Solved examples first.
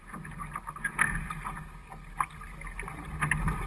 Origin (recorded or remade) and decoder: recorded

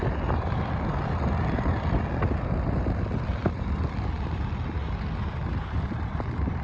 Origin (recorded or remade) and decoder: recorded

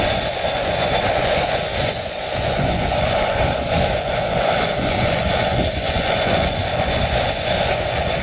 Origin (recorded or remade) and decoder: remade, vocoder, Vocos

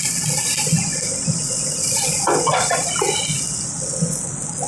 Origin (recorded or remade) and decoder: recorded